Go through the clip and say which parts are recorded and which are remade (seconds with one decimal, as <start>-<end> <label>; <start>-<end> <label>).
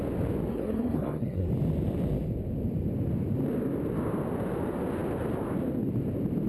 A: 0.0-0.5 recorded; 0.5-1.5 remade; 1.5-6.5 recorded